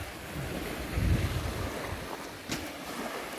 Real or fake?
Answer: real